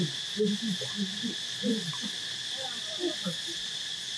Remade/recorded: recorded